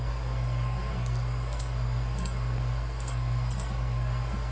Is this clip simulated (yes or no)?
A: yes